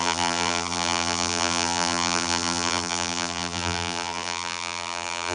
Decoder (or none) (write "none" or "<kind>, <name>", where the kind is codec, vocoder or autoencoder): vocoder, BigVGAN v2